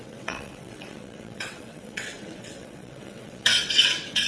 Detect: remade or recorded remade